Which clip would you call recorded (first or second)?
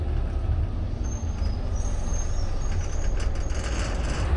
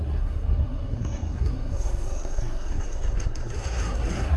first